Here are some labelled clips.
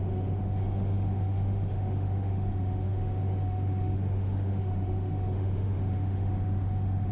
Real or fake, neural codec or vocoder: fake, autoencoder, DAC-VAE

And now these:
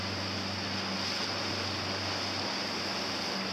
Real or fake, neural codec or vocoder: real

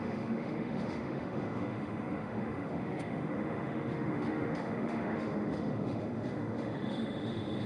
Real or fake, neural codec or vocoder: fake, autoencoder, DAC-VAE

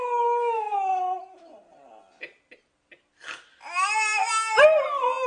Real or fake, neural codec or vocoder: real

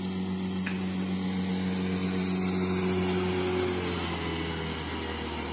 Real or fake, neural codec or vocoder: real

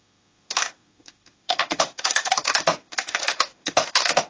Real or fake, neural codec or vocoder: fake, autoencoder, DAC-VAE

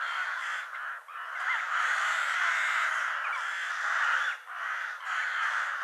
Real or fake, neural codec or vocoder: real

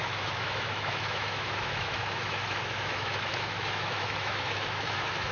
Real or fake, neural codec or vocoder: fake, autoencoder, DAC-VAE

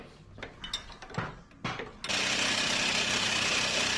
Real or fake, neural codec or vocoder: real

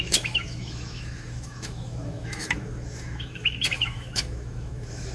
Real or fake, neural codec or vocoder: fake, autoencoder, DAC-VAE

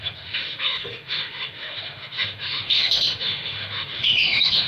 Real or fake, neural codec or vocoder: fake, autoencoder, DAC-VAE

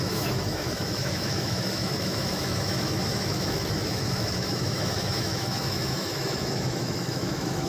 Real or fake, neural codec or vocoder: fake, autoencoder, DAC-VAE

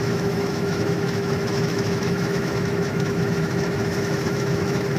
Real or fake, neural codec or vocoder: fake, autoencoder, DAC-VAE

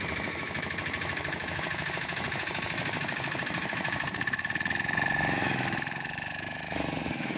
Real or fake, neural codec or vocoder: fake, autoencoder, DAC-VAE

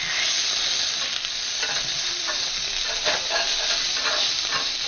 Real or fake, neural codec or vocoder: real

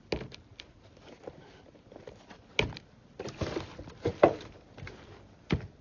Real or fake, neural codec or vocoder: real